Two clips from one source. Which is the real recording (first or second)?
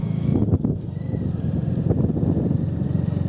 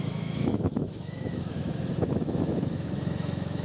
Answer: first